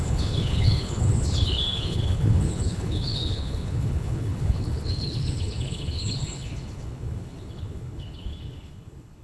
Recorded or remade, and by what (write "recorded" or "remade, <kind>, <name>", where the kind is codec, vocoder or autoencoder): remade, codec, HILCodec